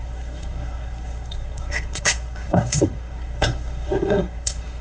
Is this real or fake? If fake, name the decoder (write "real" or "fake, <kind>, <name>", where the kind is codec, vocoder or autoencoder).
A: fake, codec, SNAC